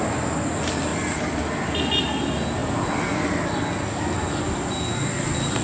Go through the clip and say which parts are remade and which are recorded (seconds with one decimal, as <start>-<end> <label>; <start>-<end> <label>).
0.0-0.9 recorded; 0.9-1.4 remade; 1.4-2.6 recorded; 2.6-3.1 remade; 3.1-5.6 recorded